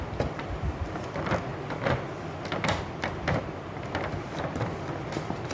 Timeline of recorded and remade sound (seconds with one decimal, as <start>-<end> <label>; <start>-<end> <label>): 0.0-1.5 remade; 1.5-2.2 recorded; 2.2-5.5 remade